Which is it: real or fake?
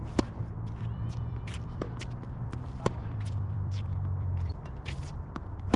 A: fake